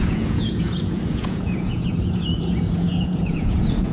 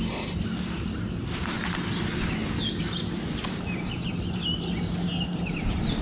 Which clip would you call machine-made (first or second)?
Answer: first